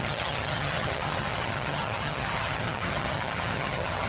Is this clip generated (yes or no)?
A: yes